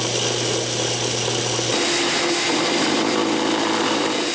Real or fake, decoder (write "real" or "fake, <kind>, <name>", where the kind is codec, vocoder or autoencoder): real